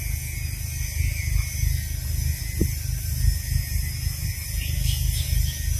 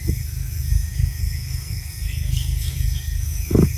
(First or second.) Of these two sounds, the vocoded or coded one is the second